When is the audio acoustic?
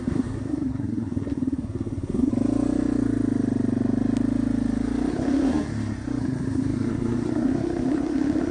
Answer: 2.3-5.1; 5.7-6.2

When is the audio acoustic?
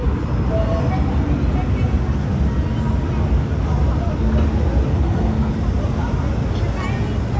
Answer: 0.0-4.9; 5.5-7.4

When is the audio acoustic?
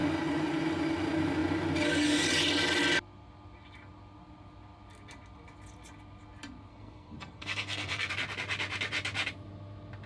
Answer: 0.0-6.7; 8.1-10.1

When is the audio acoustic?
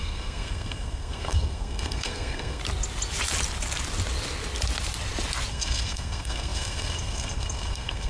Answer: 2.6-5.5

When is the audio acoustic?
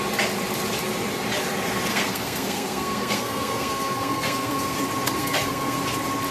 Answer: 0.0-1.9; 4.8-5.2; 5.8-6.3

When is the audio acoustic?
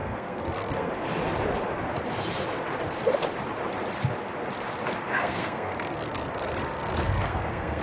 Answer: 0.9-5.2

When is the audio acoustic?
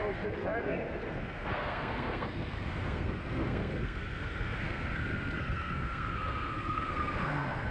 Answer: none